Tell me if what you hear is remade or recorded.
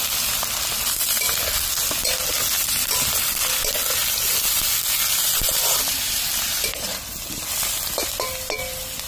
recorded